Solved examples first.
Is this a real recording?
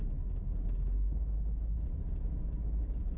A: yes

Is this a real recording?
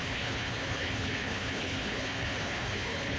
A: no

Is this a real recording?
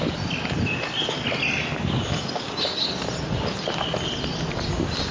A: yes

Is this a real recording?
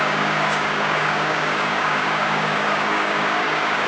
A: no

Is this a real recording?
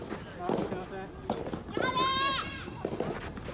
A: yes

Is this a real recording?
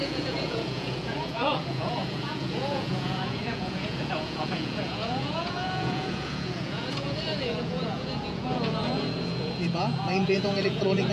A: no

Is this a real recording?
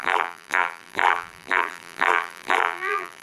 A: no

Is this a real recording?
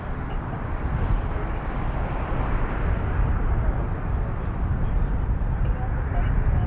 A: no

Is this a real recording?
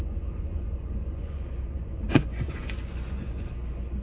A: no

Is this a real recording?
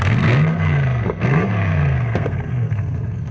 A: no